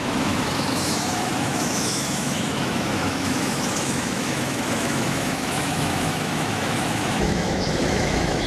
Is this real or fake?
fake